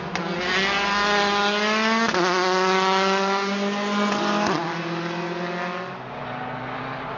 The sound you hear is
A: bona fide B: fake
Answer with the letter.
A